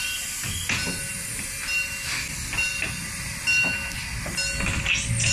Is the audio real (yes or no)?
yes